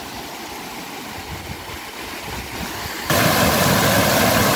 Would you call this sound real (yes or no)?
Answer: yes